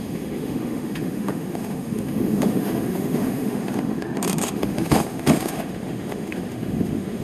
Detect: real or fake fake